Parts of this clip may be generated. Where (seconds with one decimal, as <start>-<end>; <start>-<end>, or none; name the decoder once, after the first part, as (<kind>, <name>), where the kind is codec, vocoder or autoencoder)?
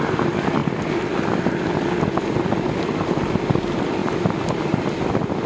0.0-0.6 (vocoder, BigVGAN v2); 2.8-4.0; 5.1-5.5